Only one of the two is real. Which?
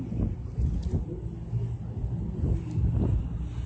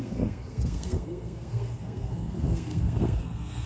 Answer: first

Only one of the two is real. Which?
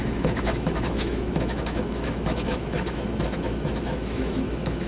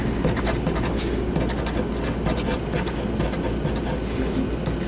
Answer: second